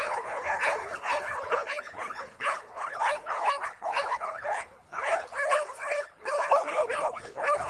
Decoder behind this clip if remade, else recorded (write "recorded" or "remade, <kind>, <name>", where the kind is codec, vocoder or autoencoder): remade, codec, HILCodec